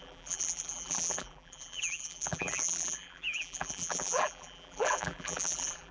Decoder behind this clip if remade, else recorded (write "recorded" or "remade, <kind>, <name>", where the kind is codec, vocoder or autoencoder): remade, vocoder, BigVGAN v2